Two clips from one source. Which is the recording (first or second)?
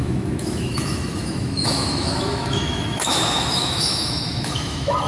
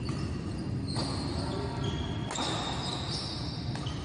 second